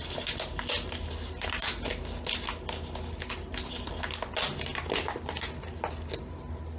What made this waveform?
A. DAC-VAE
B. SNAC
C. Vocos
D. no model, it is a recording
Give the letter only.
D